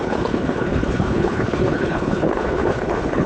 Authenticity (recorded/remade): remade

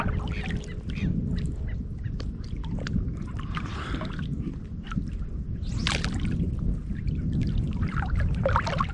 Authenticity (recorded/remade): recorded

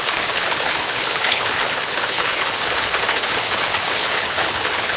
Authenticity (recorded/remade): remade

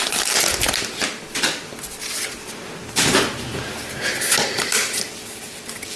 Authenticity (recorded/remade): recorded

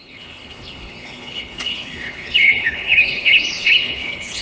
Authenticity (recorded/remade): remade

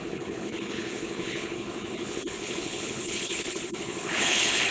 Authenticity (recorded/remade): remade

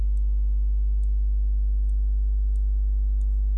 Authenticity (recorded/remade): recorded